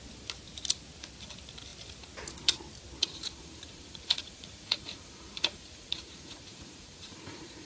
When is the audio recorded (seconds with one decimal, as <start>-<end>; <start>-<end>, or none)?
0.0-3.0